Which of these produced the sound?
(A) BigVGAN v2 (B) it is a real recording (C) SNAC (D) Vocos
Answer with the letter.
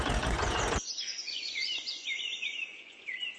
D